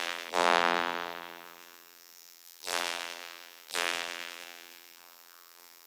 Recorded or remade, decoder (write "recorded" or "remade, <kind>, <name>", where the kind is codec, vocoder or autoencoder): remade, vocoder, BigVGAN v2